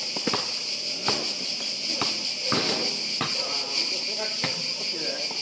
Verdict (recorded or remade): recorded